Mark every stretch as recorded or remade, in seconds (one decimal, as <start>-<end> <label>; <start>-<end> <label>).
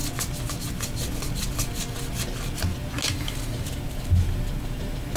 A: 0.0-5.2 recorded